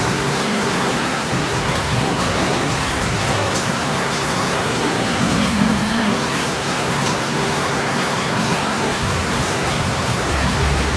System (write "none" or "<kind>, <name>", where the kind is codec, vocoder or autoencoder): codec, SNAC